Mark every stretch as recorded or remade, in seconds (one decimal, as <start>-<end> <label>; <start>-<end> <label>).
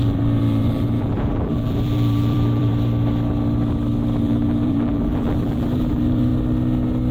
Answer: 0.0-2.7 remade; 2.7-4.2 recorded; 4.2-6.3 remade; 6.3-7.1 recorded